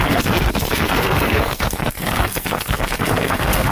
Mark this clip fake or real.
fake